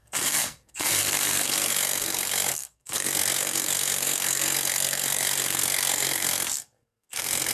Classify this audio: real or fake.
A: fake